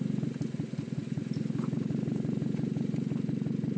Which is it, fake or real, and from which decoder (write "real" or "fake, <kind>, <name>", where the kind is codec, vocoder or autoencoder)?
real